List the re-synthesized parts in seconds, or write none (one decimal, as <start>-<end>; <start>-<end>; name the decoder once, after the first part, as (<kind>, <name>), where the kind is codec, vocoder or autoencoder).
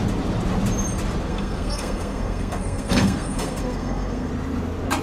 1.3-4.3 (codec, SNAC)